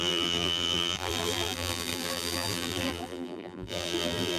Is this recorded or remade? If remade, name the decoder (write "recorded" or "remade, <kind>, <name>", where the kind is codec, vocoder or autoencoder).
remade, vocoder, BigVGAN v2